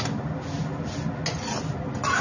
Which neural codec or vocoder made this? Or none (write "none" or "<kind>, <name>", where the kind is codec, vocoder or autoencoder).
none